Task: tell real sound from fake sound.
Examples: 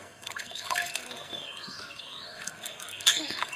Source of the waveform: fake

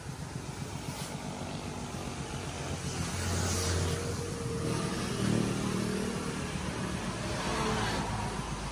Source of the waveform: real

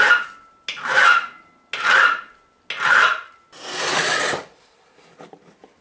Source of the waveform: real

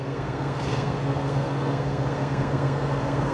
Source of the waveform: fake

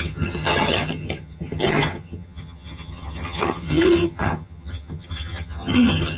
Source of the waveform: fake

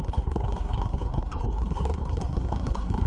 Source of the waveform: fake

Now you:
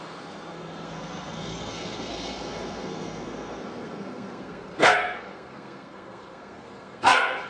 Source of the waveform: fake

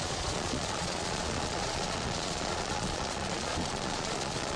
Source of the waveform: fake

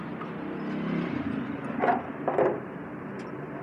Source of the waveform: real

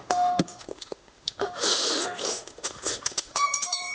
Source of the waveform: fake